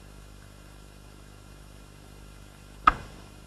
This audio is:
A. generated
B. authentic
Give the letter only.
A